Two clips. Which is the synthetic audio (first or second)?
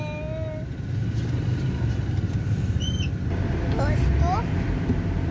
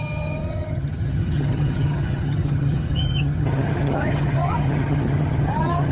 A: second